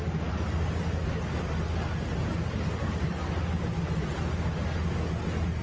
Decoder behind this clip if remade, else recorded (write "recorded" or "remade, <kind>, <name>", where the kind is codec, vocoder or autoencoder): recorded